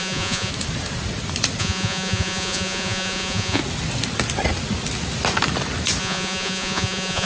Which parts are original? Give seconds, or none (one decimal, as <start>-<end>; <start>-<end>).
0.5-1.6; 3.6-6.0